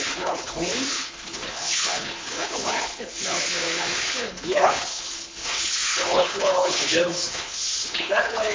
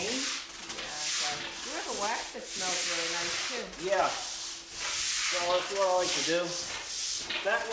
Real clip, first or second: second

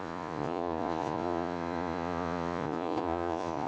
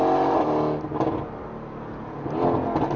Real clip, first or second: second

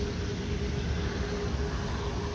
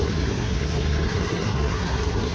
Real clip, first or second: first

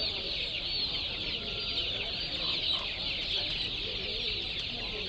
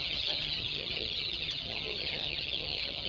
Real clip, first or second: first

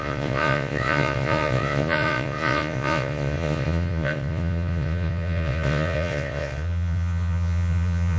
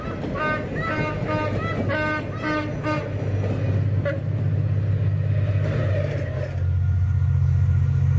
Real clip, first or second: second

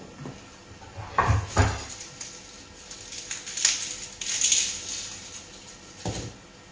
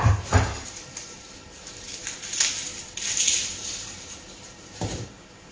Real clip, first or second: first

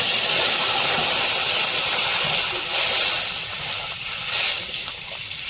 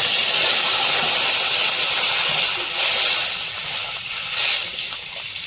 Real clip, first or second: second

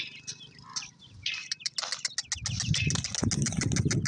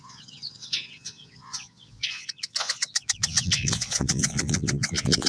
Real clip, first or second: first